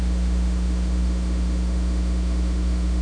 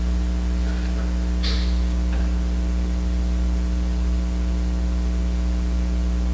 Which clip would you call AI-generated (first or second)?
first